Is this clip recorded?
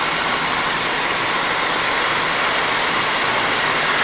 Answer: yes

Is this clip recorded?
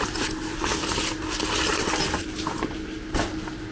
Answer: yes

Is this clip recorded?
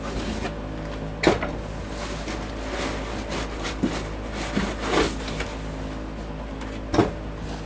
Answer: yes